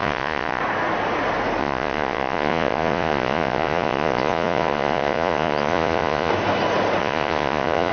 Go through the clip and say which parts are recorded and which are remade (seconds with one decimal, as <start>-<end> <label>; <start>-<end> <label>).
0.0-0.6 remade; 0.6-1.6 recorded; 1.6-6.3 remade; 6.3-7.0 recorded; 7.0-7.9 remade